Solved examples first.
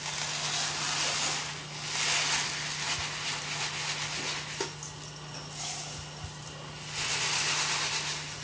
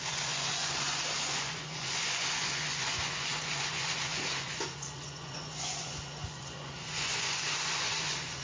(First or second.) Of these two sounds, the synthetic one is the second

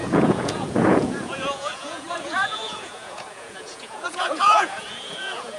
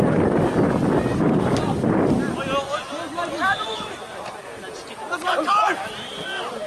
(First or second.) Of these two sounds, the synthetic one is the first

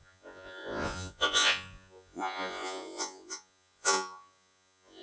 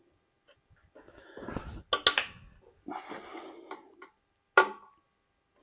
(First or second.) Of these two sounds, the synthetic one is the first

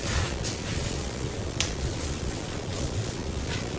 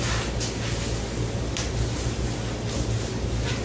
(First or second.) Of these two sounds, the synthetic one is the first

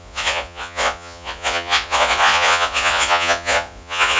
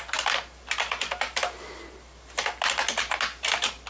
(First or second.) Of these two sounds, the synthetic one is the first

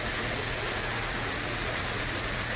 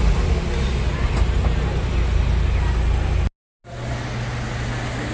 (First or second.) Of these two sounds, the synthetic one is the first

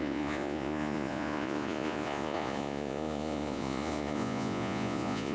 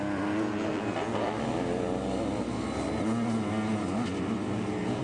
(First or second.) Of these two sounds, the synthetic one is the first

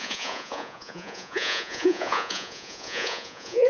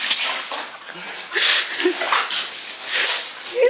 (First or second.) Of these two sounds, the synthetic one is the first